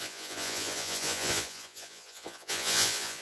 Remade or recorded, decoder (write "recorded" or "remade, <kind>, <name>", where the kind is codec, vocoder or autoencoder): remade, vocoder, Vocos